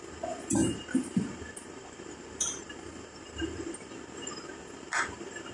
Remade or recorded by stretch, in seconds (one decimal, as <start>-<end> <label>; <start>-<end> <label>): 0.0-0.6 recorded; 0.6-3.9 remade; 3.9-5.5 recorded